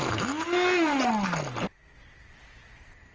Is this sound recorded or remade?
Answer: recorded